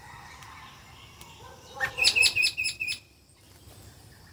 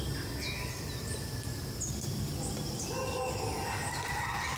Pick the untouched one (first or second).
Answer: second